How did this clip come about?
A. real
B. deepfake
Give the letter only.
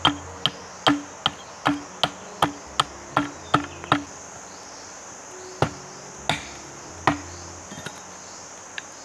A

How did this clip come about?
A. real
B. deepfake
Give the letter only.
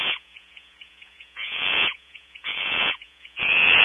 B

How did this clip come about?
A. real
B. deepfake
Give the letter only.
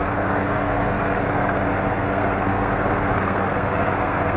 B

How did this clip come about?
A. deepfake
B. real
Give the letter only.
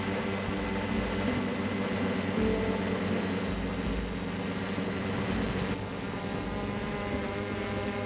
B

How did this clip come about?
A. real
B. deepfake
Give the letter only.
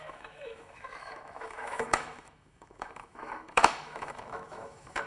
B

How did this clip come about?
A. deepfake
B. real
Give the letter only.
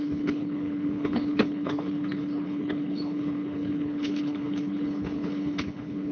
A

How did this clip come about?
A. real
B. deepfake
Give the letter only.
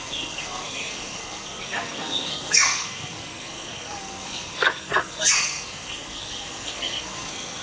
B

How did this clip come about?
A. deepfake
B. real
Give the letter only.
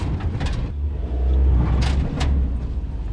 B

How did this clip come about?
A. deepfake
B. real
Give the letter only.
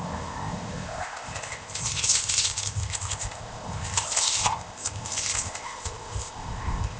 A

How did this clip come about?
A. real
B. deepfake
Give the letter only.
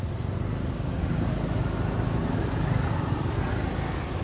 A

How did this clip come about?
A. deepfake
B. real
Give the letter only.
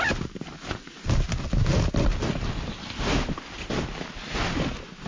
B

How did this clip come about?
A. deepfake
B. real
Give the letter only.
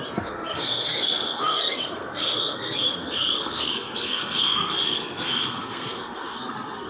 A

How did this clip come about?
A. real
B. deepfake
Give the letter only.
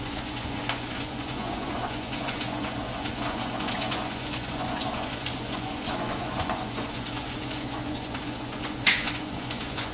B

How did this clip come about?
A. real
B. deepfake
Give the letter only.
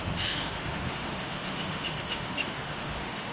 B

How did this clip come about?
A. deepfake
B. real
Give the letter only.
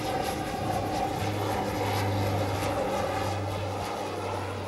B